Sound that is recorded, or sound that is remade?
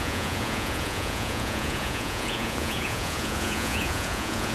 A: remade